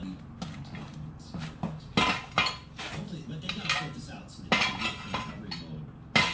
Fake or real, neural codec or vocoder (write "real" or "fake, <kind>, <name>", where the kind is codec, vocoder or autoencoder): real